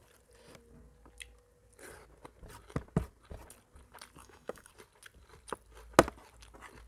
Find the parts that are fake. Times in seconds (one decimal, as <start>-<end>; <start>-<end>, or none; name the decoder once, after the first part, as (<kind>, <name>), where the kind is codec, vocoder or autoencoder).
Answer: 4.2-4.7 (autoencoder, DAC-VAE)